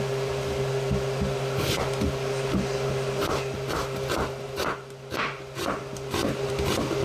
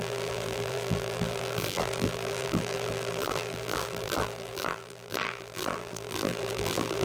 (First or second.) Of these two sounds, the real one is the first